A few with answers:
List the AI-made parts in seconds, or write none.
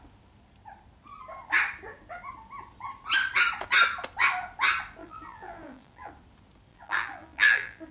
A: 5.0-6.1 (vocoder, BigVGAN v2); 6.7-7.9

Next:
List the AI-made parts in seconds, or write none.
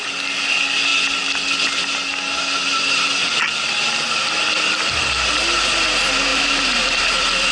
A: 6.3-7.0 (vocoder, BigVGAN v2)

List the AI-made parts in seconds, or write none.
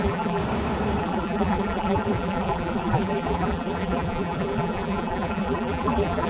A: 0.0-0.4 (vocoder, BigVGAN v2); 1.0-6.3